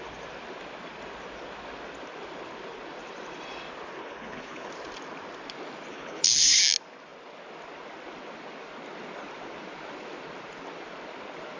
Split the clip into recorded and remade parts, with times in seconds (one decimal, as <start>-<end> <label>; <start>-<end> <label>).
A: 0.0-4.0 recorded; 4.0-4.7 remade; 4.7-5.9 recorded; 5.9-6.6 remade; 6.6-11.6 recorded